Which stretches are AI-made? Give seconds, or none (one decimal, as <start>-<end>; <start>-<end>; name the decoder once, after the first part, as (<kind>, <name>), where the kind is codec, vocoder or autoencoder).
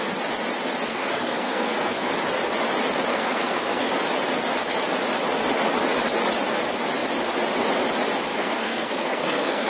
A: 0.9-2.1 (codec, SNAC); 3.1-3.9; 8.3-9.7